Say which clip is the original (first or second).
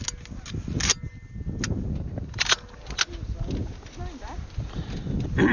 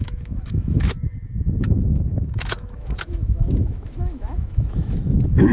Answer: first